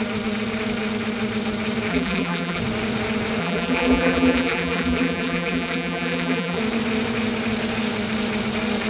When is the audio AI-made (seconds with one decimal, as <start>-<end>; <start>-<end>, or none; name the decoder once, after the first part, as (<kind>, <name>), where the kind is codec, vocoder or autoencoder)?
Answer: 1.9-2.6 (vocoder, BigVGAN v2); 3.4-6.6